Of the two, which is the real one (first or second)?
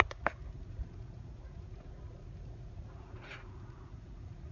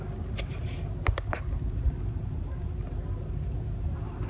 second